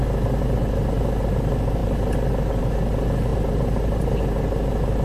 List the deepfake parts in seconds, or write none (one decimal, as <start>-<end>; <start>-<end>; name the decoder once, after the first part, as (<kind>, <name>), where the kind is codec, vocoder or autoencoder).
3.3-4.2 (vocoder, BigVGAN v2)